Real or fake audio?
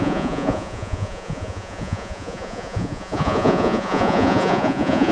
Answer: fake